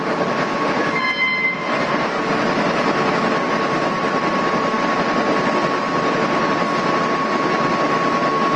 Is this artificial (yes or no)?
no